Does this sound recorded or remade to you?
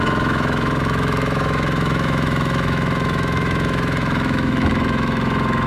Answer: remade